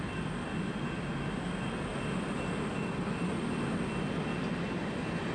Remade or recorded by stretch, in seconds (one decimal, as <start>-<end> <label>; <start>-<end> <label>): 0.0-5.3 recorded